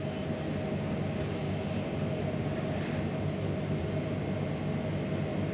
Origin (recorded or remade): recorded